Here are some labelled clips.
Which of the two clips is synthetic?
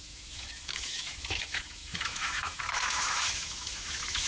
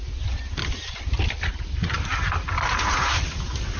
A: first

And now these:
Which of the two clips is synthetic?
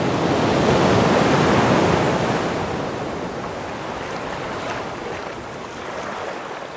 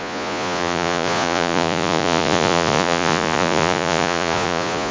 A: second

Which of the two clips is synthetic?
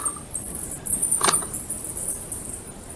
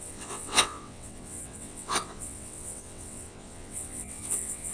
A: second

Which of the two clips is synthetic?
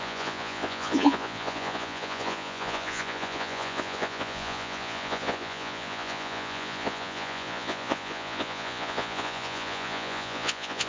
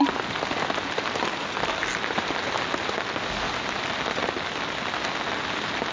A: first